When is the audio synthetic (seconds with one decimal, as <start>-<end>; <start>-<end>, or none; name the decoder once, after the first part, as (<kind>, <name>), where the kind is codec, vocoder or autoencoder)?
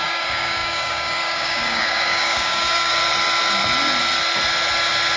0.0-2.9 (codec, DAC)